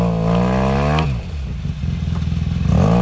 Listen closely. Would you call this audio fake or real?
real